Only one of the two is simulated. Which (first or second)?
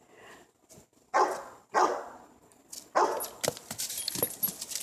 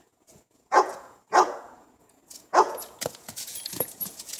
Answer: second